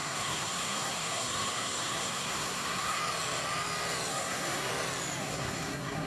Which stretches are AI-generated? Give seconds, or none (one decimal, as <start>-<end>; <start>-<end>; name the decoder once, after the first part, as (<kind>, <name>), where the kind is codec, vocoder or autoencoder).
0.0-3.0 (codec, SNAC); 4.1-4.7; 5.2-6.1